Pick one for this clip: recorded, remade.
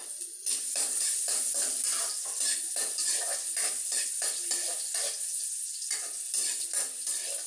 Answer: recorded